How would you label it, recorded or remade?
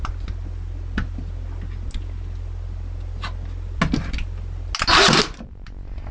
recorded